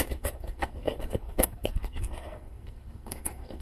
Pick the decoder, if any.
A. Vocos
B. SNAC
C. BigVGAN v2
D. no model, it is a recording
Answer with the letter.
B